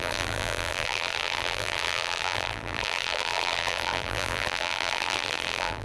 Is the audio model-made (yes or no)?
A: yes